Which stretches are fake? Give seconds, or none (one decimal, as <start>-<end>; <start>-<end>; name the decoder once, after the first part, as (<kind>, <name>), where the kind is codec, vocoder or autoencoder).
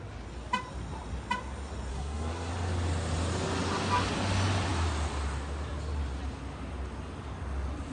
1.9-2.5 (codec, SNAC)